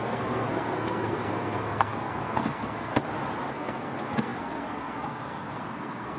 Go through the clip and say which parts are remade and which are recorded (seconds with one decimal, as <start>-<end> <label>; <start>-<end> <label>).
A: 0.0-2.9 remade; 2.9-3.5 recorded; 3.5-6.2 remade

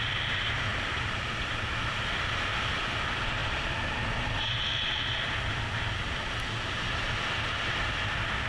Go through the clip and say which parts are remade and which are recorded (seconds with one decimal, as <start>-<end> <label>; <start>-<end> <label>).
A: 0.0-8.5 recorded